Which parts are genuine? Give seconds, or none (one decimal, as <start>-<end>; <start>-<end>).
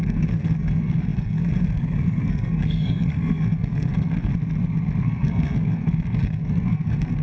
4.3-5.0